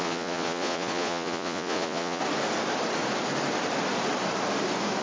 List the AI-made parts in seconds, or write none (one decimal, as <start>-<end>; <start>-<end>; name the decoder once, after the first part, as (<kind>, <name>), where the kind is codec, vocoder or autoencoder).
0.0-2.2 (vocoder, Vocos)